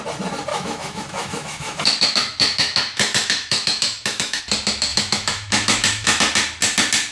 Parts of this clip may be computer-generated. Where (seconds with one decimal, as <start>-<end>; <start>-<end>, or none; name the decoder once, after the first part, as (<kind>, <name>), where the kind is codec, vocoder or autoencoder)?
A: 0.5-4.4 (autoencoder, DAC-VAE); 4.9-6.2